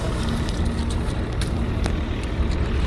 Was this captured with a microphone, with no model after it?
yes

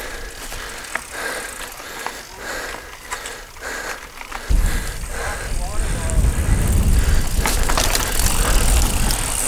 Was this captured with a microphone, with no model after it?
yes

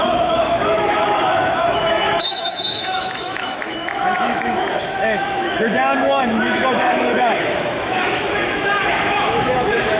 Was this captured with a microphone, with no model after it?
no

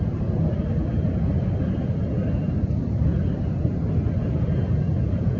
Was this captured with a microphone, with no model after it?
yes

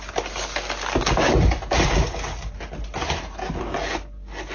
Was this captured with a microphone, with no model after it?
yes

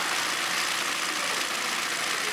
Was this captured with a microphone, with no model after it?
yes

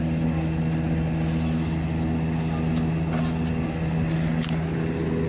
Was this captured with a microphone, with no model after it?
yes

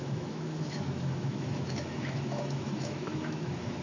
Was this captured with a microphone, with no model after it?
no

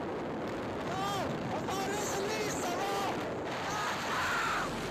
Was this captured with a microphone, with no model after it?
yes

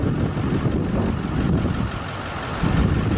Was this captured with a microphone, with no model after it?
yes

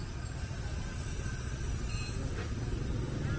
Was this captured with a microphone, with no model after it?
yes